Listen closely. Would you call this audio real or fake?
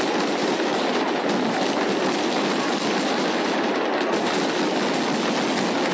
real